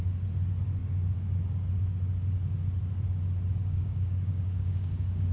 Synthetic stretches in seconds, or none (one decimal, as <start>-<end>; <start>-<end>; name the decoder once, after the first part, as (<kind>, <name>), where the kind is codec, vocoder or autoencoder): 3.6-5.3 (codec, DAC)